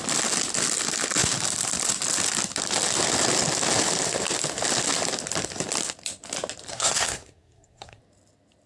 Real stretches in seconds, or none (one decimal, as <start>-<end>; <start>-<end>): 0.0-6.7; 8.0-8.7